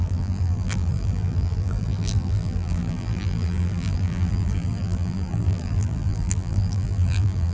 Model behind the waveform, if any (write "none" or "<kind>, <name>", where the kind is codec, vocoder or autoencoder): vocoder, BigVGAN v2